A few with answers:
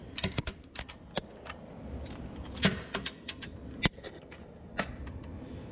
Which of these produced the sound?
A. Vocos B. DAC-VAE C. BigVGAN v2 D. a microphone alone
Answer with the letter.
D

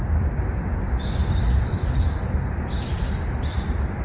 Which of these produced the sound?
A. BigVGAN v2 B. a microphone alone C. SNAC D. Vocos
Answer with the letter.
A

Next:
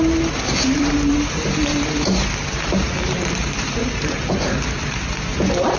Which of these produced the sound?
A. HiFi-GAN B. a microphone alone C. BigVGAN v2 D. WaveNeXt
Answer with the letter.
C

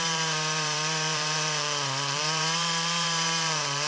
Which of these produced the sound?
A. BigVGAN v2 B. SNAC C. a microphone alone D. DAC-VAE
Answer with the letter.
A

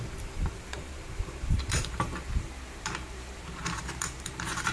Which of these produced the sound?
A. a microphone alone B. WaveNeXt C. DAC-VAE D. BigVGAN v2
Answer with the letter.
D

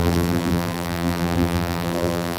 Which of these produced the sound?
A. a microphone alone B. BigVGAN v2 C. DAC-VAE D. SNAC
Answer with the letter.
B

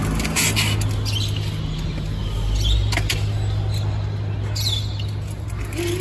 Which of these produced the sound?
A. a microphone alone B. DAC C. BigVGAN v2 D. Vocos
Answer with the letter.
A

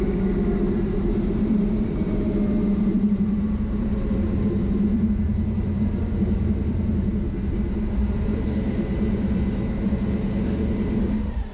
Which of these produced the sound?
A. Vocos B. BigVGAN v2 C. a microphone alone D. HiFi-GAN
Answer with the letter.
B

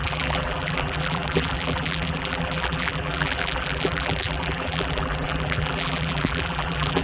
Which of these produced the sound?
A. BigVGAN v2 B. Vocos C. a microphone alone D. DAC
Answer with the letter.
A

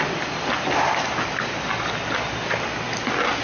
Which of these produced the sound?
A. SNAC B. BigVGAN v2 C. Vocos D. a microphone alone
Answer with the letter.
D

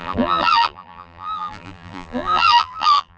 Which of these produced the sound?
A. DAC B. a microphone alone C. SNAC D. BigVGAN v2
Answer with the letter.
D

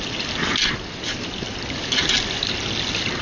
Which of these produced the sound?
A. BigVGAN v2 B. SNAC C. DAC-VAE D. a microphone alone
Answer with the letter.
D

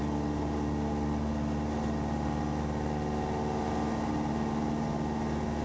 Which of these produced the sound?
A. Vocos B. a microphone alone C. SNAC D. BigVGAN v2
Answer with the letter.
B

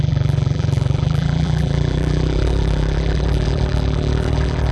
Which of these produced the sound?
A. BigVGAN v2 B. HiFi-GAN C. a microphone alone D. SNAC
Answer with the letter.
A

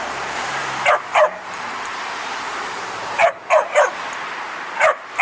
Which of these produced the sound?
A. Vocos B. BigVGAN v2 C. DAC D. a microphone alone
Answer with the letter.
B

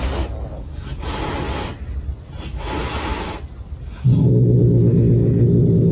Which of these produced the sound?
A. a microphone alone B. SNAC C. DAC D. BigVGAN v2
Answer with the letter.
A